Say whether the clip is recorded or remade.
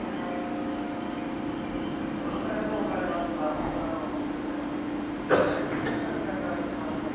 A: recorded